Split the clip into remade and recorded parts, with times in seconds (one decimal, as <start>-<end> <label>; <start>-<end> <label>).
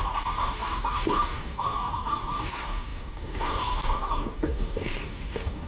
0.0-5.7 remade